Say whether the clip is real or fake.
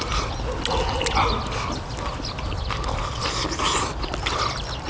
real